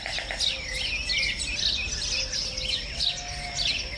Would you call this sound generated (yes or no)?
no